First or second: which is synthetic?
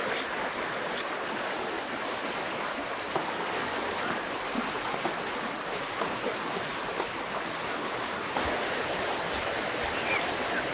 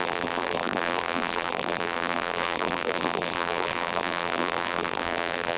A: second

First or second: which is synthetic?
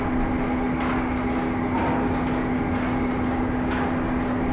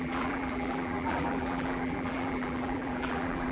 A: second